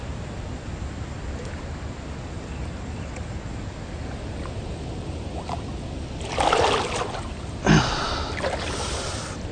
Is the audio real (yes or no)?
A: yes